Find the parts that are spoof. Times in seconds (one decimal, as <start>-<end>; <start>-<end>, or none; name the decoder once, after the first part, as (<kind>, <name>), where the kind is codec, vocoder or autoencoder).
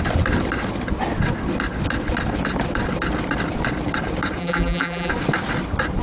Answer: 4.4-5.1 (vocoder, BigVGAN v2)